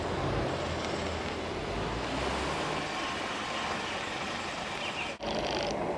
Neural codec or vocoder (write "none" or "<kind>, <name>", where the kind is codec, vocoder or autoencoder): none